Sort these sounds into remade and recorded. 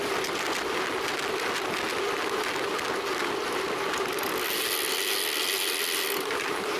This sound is recorded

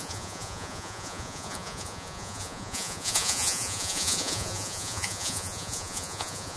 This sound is remade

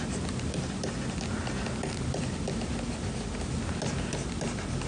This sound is recorded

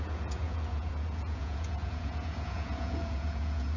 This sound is remade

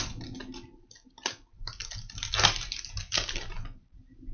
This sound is recorded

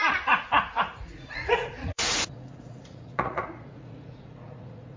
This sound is remade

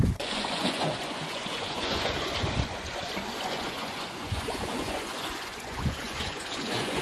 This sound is remade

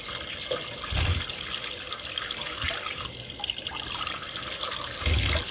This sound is recorded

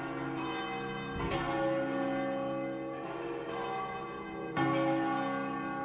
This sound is recorded